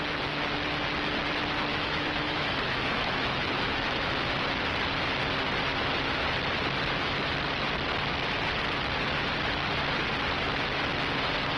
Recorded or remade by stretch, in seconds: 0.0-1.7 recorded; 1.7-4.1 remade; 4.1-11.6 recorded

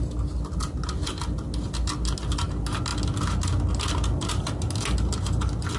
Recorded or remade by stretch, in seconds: 0.0-5.8 recorded

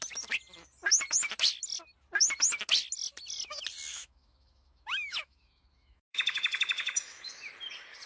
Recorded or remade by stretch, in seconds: 0.0-3.9 recorded; 3.9-7.5 remade; 7.5-8.1 recorded

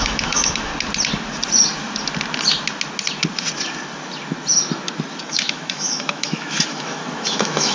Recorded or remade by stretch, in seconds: 0.0-0.7 remade; 0.7-5.3 recorded; 5.3-7.7 remade